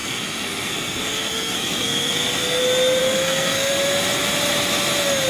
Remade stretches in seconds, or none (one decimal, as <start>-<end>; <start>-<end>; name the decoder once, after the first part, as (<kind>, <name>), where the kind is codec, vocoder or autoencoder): 0.0-2.6 (codec, SNAC); 3.0-3.7

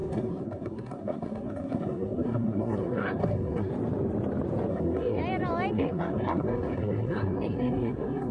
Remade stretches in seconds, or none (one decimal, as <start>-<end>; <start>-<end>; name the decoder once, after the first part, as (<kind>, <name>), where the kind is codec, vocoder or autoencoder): 0.0-3.7 (codec, SNAC); 4.7-5.2; 5.7-8.3

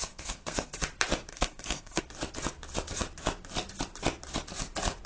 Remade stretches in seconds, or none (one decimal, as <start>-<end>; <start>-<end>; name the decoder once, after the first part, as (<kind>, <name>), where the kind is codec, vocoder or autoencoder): 0.0-0.8 (codec, SNAC); 1.3-2.0

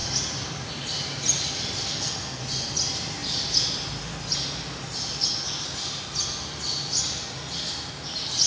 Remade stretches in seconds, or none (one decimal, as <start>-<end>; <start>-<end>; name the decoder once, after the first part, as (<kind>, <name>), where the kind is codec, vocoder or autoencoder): 1.8-2.4 (codec, SNAC)

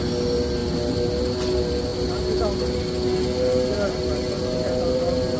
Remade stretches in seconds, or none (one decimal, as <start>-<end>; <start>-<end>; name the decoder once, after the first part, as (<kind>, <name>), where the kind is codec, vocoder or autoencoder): none